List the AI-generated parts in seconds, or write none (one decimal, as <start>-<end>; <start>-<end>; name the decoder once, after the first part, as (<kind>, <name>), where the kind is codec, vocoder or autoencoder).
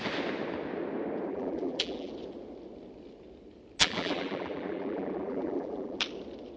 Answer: 1.3-2.1 (vocoder, BigVGAN v2); 3.8-6.0